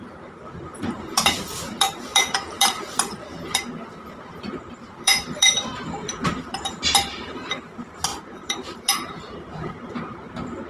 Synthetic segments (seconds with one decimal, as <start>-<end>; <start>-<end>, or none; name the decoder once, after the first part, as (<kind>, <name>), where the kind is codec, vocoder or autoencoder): 0.0-10.7 (vocoder, BigVGAN v2)